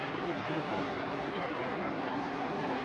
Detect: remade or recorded remade